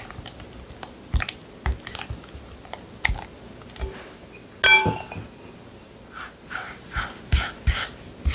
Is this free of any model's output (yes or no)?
yes